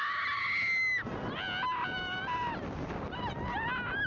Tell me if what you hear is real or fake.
real